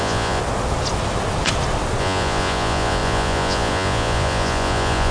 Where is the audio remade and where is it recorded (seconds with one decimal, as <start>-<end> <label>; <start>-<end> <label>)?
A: 0.0-0.4 remade; 0.4-2.0 recorded; 2.0-5.1 remade